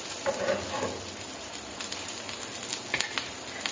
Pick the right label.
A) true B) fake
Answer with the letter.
A